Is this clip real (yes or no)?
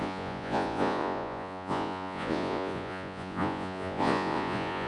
no